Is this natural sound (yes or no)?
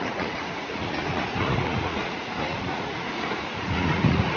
no